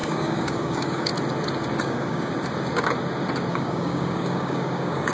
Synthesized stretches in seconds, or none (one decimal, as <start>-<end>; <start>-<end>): 0.0-1.1; 1.8-2.3; 3.5-5.1